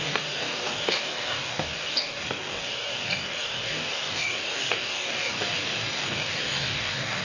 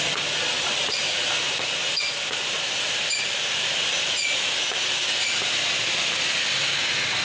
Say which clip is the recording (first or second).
second